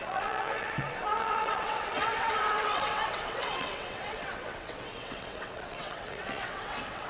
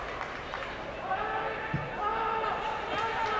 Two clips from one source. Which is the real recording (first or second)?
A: second